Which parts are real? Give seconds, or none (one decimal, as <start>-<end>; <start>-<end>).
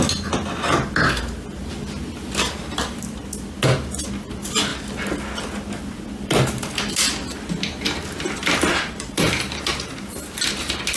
0.0-2.6; 3.2-8.7; 10.0-11.0